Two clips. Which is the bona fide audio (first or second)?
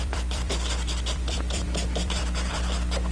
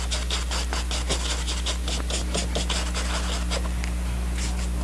second